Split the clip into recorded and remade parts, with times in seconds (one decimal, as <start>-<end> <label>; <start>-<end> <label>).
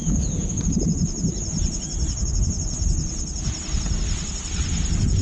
0.0-0.6 remade; 0.6-5.2 recorded